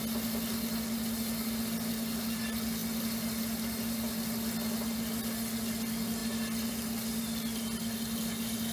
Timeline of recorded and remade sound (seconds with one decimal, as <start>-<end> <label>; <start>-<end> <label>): 0.0-8.7 recorded